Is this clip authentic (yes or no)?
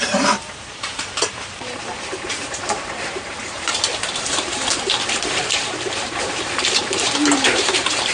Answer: no